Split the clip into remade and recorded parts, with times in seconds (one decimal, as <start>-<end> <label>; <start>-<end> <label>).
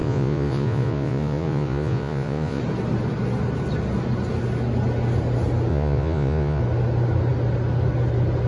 0.0-2.6 remade; 2.6-5.7 recorded; 5.7-6.6 remade; 6.6-8.5 recorded